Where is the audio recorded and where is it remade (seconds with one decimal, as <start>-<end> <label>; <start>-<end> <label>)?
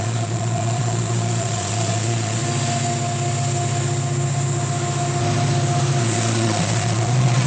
0.0-2.4 remade; 2.4-6.0 recorded; 6.0-7.5 remade